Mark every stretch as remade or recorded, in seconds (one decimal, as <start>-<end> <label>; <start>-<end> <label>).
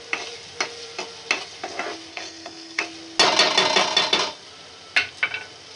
0.0-2.1 recorded; 2.1-2.8 remade; 2.8-5.8 recorded